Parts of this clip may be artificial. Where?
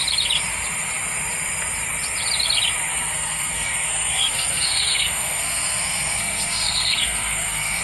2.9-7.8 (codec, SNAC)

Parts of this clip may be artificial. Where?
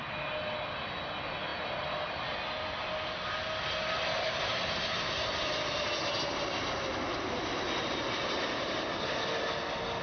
none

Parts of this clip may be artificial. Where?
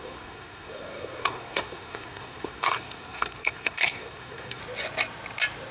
0.0-4.6 (codec, SNAC)